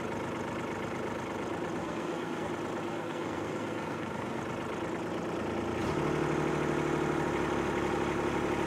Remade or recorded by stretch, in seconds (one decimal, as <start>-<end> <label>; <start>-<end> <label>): 0.0-1.8 recorded; 1.8-2.5 remade; 2.5-2.9 recorded; 2.9-4.4 remade; 4.4-8.7 recorded